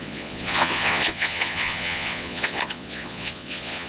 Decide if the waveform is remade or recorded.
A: remade